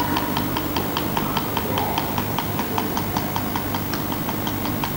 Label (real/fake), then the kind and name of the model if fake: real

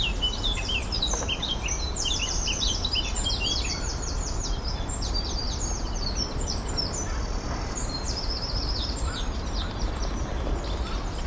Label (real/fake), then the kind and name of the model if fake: fake, vocoder, BigVGAN v2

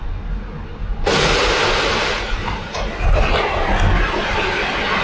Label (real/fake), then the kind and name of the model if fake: real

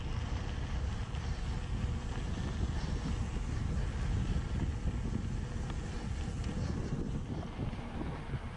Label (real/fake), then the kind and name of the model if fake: real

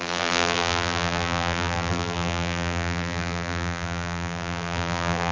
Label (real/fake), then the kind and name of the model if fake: fake, vocoder, BigVGAN v2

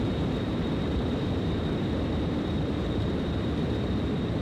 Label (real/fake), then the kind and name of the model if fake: fake, vocoder, BigVGAN v2